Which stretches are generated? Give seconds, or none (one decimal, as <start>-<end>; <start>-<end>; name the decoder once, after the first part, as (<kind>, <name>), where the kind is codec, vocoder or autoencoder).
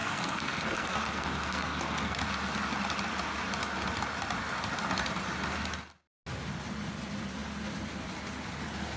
0.0-2.2 (codec, SNAC)